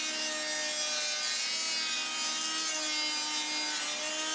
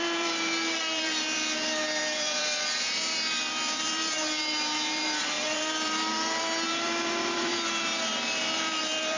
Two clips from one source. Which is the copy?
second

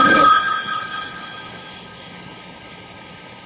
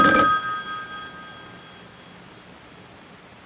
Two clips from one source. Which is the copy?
first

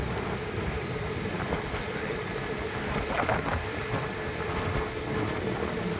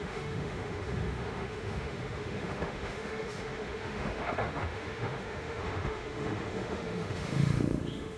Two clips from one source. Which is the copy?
second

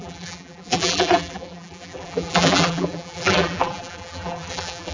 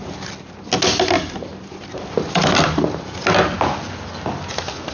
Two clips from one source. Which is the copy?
first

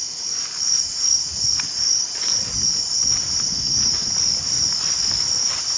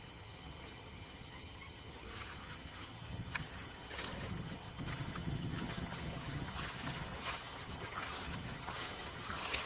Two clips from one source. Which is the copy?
second